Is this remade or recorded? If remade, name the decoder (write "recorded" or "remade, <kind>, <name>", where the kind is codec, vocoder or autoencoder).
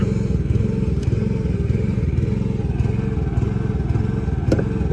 recorded